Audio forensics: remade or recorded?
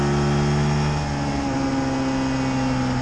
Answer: recorded